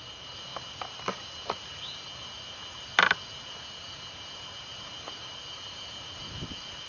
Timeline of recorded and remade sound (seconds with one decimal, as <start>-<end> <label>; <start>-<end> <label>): 0.0-6.9 recorded